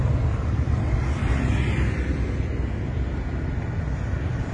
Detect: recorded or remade recorded